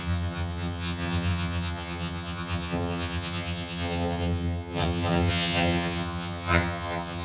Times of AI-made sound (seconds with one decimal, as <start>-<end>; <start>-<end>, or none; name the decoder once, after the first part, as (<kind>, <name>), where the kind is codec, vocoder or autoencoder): 0.0-7.2 (vocoder, HiFi-GAN)